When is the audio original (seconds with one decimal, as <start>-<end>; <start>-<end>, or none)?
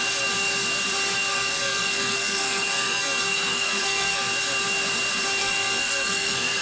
0.0-1.3; 4.2-5.4